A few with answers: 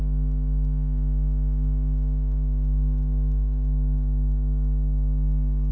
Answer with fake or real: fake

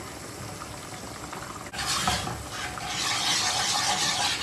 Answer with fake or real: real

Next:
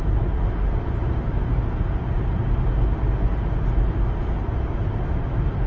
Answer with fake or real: real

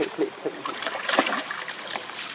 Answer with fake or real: real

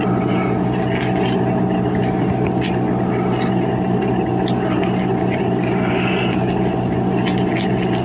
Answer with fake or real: real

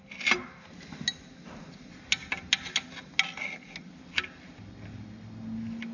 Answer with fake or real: real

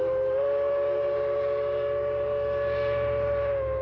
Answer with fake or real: real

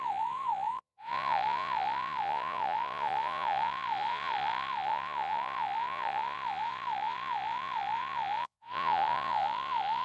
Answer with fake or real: fake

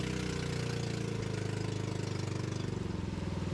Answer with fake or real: real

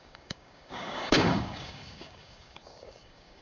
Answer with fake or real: fake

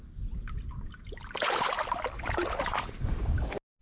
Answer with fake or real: real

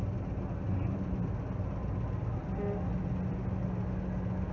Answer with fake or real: real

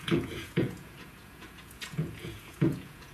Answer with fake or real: fake